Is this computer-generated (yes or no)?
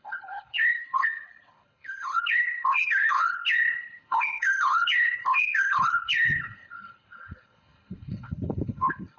yes